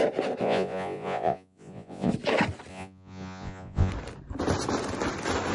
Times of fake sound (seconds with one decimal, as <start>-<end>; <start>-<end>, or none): 0.4-2.1; 2.7-3.9